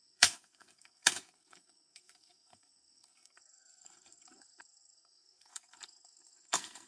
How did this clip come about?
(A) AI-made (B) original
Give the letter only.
A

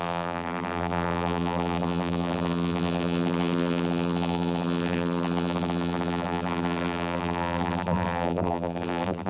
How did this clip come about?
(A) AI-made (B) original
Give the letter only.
A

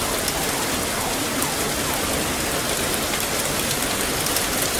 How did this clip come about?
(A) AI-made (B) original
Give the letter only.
B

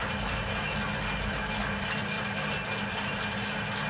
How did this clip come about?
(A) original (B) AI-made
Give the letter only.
A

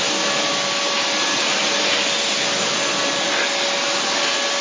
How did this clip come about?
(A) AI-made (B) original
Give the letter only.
B